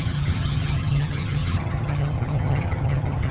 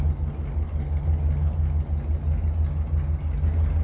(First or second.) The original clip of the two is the second